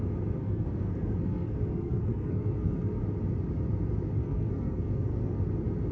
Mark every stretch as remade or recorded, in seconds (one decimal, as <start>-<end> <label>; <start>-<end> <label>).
0.0-0.4 recorded; 0.4-3.0 remade; 3.0-4.2 recorded; 4.2-5.4 remade; 5.4-5.9 recorded